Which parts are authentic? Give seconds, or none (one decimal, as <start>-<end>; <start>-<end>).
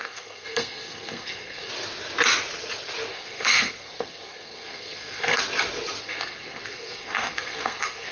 1.7-3.1; 5.4-6.0